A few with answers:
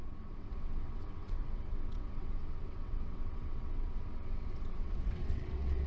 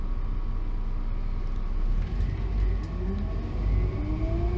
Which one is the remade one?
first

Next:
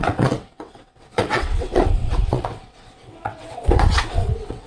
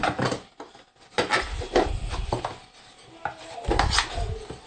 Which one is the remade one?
first